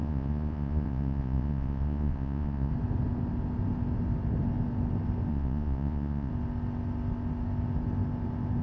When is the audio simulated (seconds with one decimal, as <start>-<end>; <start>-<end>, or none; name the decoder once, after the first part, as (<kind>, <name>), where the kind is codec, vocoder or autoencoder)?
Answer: 0.0-2.7 (vocoder, Vocos); 5.3-6.3